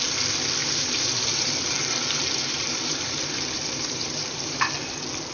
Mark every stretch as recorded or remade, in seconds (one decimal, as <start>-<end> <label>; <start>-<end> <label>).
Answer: 0.0-0.6 recorded; 0.6-1.9 remade; 1.9-2.4 recorded; 2.4-4.7 remade; 4.7-5.3 recorded